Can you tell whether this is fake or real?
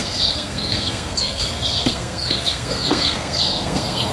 fake